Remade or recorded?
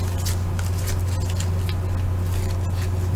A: recorded